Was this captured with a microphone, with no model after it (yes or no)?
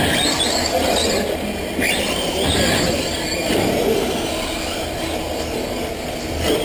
yes